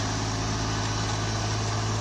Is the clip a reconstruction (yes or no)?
no